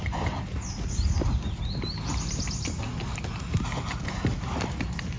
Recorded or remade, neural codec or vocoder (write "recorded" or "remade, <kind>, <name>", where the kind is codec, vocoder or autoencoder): recorded